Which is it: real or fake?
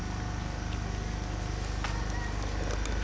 real